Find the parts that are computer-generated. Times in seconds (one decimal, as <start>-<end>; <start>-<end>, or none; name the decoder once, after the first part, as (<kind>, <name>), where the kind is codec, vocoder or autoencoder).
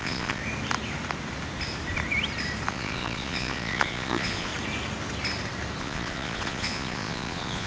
0.0-0.4 (vocoder, Vocos); 2.7-4.5; 5.8-7.7